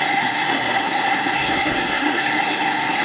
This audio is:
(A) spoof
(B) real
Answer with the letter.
A